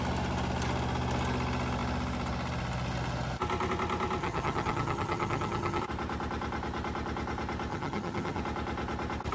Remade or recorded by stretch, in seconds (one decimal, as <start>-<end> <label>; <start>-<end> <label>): 0.0-4.2 recorded; 4.2-5.8 remade; 5.8-7.7 recorded; 7.7-8.4 remade; 8.4-9.3 recorded